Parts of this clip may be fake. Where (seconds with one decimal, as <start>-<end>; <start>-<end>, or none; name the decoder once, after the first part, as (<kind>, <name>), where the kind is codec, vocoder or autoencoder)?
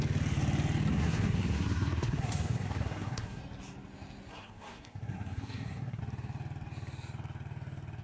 0.9-3.4 (codec, SNAC); 4.3-6.0